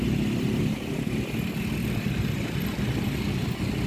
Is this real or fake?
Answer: real